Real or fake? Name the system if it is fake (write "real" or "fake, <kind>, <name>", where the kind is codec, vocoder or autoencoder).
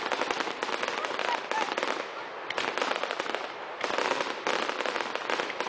fake, vocoder, BigVGAN v2